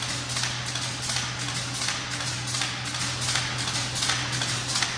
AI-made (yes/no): no